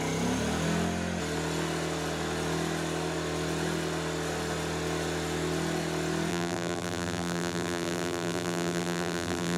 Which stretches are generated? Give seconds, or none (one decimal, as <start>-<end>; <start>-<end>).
6.3-9.6